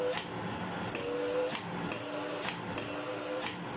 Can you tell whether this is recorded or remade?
recorded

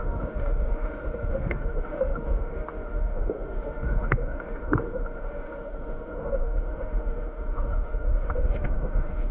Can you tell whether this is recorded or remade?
remade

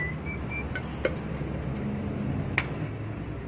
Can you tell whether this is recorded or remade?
recorded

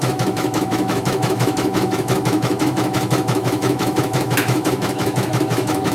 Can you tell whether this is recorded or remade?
remade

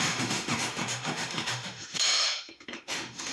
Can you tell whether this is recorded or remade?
remade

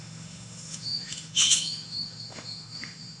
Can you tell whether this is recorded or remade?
remade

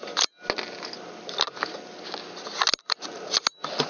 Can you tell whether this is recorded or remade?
recorded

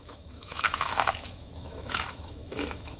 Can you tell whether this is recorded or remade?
remade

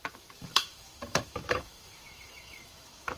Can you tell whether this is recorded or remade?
remade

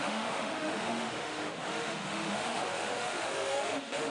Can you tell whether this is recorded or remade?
remade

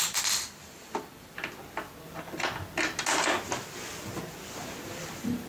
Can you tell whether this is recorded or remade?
recorded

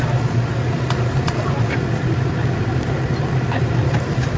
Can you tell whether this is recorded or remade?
recorded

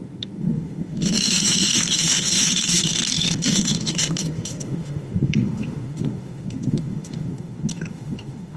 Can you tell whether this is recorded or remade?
remade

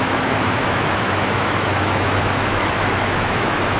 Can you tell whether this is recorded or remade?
remade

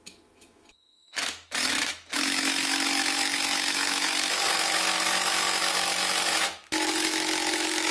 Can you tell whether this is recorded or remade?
remade